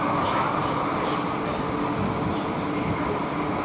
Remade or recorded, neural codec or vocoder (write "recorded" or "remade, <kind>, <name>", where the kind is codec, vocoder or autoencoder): recorded